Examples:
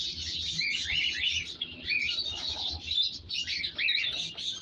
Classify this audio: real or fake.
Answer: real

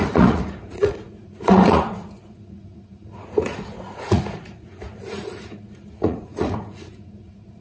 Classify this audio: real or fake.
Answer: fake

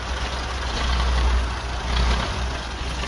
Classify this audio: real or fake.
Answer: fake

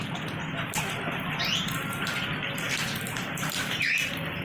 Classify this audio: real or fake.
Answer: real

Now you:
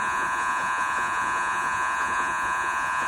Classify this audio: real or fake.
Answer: fake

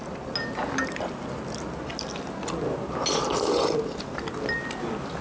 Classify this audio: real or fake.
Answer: real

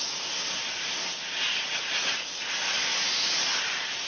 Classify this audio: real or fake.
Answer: real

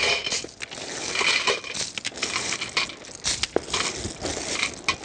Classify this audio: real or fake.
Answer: real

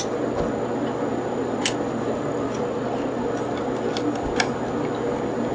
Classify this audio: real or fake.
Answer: real